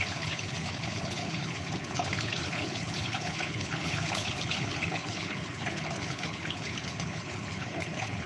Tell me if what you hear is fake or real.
fake